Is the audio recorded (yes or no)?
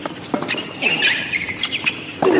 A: yes